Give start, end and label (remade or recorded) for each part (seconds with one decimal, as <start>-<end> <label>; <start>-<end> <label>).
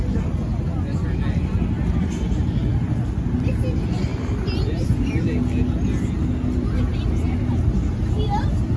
0.0-8.8 recorded